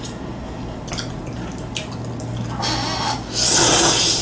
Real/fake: real